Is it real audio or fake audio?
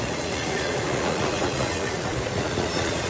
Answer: fake